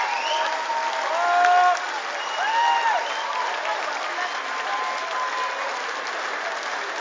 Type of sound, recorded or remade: recorded